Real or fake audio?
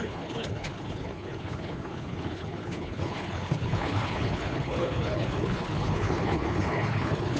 fake